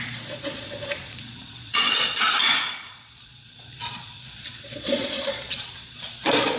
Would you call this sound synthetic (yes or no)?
yes